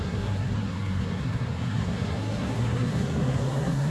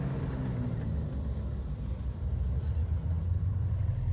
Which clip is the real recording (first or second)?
second